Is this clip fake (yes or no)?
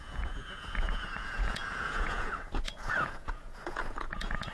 yes